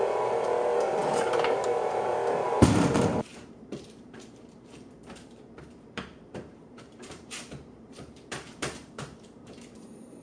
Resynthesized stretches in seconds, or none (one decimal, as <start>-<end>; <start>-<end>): 0.0-10.2